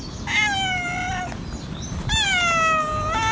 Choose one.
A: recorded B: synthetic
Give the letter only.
A